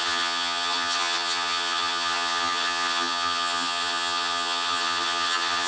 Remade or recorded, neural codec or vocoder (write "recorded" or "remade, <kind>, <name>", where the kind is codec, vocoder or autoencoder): remade, vocoder, HiFi-GAN